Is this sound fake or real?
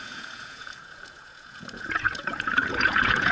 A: fake